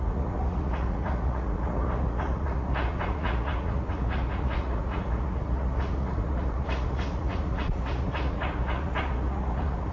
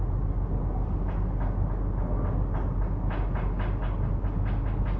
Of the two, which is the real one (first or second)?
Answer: second